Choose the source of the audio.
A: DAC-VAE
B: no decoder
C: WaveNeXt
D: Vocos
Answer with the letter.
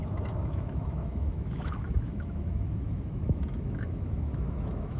A